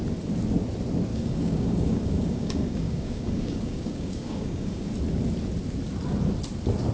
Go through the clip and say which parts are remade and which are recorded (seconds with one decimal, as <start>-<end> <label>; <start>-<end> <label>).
0.0-1.1 recorded; 1.1-4.9 remade; 4.9-6.9 recorded